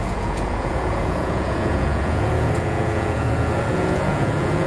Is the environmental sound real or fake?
fake